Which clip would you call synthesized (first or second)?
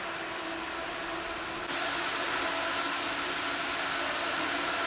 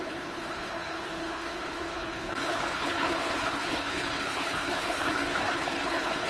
second